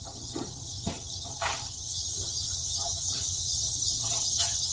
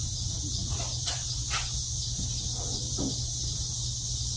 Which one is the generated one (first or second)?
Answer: first